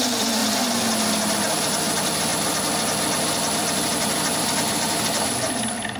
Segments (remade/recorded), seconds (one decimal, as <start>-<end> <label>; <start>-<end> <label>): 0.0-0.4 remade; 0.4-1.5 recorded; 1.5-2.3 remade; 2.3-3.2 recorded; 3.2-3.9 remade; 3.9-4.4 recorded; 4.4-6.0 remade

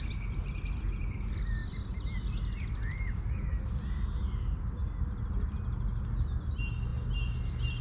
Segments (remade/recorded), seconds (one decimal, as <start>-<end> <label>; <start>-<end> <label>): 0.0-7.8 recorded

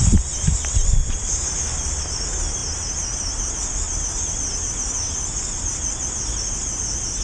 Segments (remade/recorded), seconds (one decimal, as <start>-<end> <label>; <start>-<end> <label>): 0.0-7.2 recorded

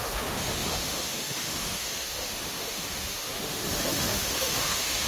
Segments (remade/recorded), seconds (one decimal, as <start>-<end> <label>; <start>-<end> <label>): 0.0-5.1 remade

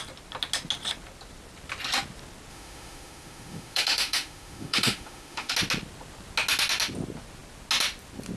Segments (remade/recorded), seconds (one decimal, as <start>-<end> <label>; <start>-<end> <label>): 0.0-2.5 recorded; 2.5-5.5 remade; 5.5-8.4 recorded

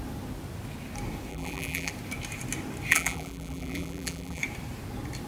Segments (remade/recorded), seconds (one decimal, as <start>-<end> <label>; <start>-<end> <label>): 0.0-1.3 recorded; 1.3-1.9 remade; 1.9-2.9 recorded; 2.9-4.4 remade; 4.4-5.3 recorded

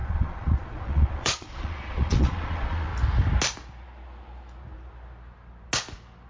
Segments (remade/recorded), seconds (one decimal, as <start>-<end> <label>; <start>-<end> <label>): 0.0-2.9 remade; 2.9-6.3 recorded